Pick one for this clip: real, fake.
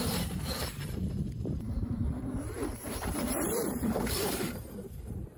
fake